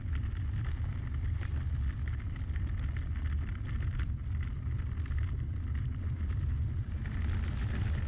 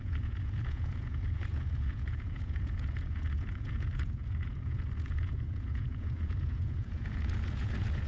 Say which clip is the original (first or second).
first